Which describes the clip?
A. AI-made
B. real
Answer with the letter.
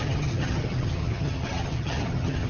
A